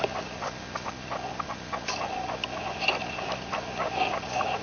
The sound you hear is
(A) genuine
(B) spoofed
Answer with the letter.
A